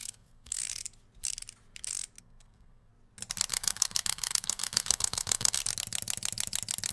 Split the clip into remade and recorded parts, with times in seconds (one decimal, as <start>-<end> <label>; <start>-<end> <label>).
0.0-0.6 remade; 0.6-2.2 recorded; 2.2-2.9 remade; 2.9-3.5 recorded; 3.5-5.6 remade; 5.6-6.9 recorded